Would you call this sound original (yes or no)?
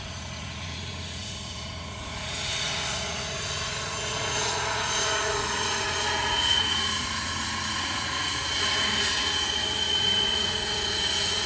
no